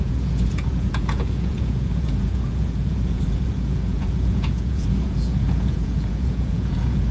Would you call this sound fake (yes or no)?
yes